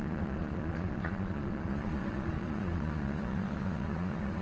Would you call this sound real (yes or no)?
no